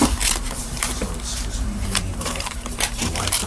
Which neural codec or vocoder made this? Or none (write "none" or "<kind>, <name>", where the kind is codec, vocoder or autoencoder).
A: vocoder, BigVGAN v2